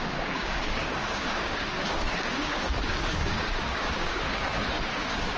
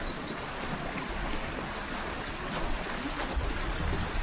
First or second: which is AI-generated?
first